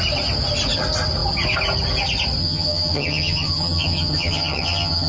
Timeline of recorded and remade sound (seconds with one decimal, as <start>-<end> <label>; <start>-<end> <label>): 0.0-2.4 recorded; 2.4-5.1 remade